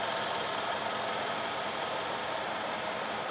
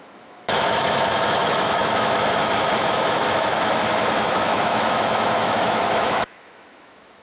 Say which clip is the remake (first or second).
second